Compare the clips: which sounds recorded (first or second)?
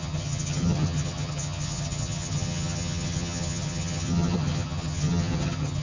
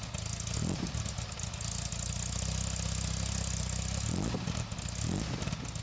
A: second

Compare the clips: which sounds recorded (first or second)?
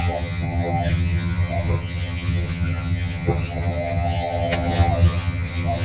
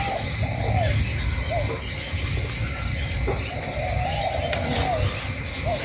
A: second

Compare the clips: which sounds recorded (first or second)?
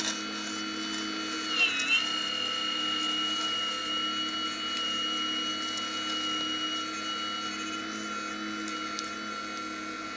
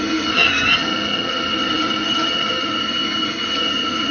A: first